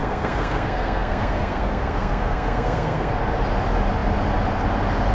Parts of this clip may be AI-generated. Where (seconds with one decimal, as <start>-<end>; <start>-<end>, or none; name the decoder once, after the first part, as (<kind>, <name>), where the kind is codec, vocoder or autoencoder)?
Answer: 0.0-3.1 (codec, SNAC)